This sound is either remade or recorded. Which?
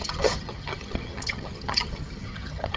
remade